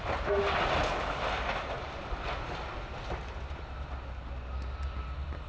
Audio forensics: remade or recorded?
recorded